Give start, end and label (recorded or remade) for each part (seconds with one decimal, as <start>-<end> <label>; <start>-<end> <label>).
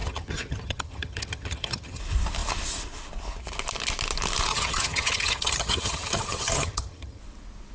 0.0-2.0 remade; 2.0-4.5 recorded; 4.5-7.2 remade; 7.2-7.7 recorded